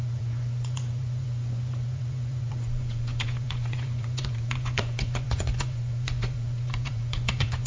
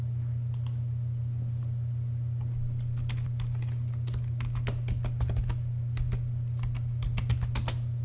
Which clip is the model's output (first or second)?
first